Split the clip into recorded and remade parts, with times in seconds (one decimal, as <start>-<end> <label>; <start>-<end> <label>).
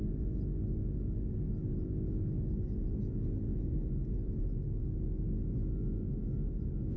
0.0-7.0 recorded